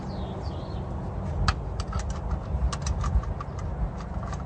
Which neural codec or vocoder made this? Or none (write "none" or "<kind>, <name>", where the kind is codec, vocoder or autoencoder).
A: none